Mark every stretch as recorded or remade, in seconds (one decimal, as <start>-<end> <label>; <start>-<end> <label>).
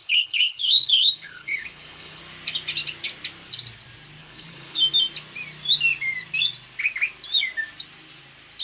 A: 0.0-2.2 remade; 2.2-4.2 recorded; 4.2-4.8 remade; 4.8-8.6 recorded